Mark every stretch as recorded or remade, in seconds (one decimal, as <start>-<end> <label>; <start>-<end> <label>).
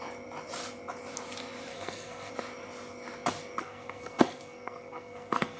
0.0-1.7 recorded; 1.7-2.3 remade; 2.3-3.6 recorded; 3.6-5.6 remade